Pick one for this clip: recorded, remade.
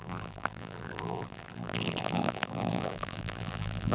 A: remade